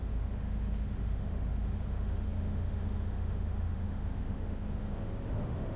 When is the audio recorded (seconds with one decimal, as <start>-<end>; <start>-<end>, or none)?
none